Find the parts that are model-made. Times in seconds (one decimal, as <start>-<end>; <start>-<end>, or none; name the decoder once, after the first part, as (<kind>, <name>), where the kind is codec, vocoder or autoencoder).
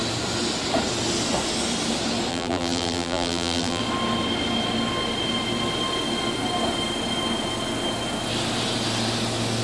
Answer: 2.3-3.8 (vocoder, BigVGAN v2)